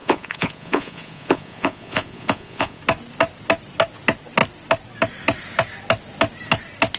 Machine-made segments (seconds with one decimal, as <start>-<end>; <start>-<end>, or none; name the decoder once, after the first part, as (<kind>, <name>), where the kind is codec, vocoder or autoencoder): 0.0-2.8 (vocoder, Vocos)